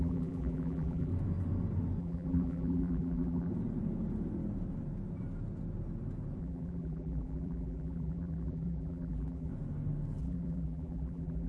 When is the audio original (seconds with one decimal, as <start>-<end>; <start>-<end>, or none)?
1.1-2.0; 3.5-6.4; 9.5-10.2